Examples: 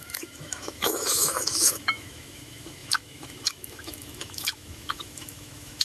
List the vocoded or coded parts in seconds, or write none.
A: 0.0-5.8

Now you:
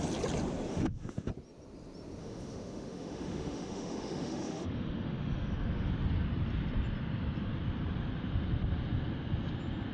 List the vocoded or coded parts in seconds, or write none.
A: 0.7-1.3; 2.2-5.9